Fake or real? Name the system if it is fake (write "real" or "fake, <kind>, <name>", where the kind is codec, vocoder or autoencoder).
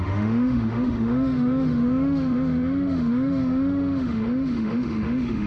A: fake, autoencoder, DAC-VAE